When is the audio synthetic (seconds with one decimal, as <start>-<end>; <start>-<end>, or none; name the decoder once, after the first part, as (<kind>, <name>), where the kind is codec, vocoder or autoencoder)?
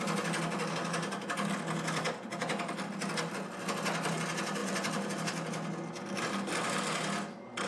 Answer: none